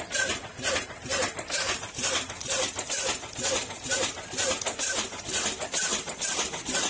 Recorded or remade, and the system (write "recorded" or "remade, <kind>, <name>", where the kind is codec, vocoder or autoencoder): recorded